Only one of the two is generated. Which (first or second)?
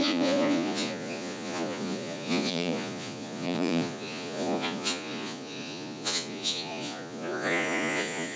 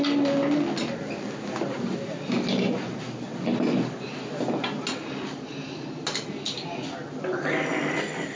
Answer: first